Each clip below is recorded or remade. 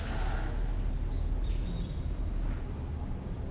recorded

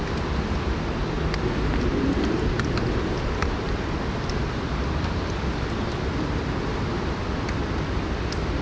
recorded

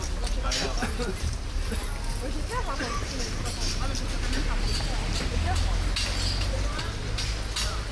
recorded